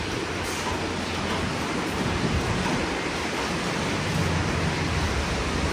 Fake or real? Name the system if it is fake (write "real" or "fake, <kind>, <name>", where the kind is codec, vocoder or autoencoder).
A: real